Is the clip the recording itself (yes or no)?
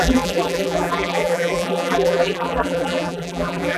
no